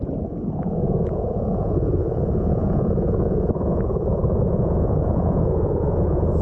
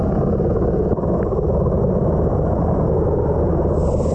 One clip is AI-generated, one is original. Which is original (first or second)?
second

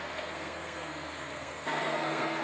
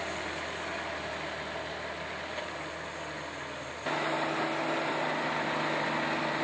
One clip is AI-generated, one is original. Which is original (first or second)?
second